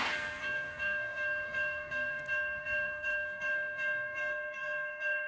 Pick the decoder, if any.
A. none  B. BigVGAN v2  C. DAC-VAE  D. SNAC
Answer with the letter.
D